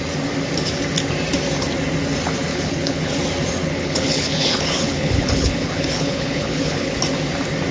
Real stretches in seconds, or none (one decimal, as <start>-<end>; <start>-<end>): 0.0-2.5; 3.1-3.6; 7.0-7.7